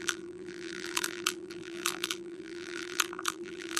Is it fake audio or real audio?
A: fake